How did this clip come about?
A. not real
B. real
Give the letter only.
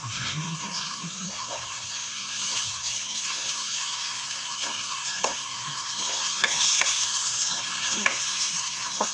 A